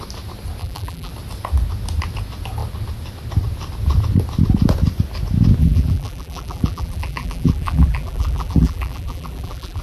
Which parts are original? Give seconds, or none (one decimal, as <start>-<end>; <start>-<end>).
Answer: 0.0-0.6; 1.1-5.6